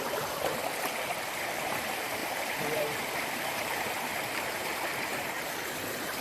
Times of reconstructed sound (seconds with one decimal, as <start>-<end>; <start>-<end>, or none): 2.2-5.3